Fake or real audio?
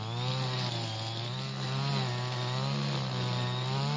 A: real